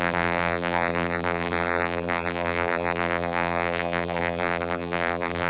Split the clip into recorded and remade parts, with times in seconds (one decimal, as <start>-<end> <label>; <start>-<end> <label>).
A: 0.0-5.5 remade